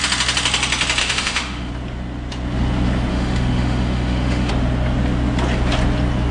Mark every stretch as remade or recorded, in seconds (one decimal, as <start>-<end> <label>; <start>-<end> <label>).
0.0-1.0 recorded; 1.0-1.7 remade; 1.7-3.1 recorded; 3.1-4.5 remade; 4.5-6.3 recorded